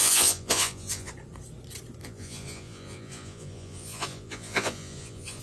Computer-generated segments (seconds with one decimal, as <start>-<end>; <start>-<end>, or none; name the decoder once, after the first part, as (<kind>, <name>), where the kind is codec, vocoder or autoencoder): 0.0-1.1 (vocoder, Vocos); 2.0-5.4